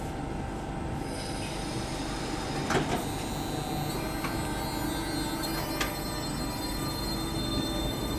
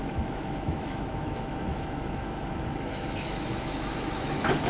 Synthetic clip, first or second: second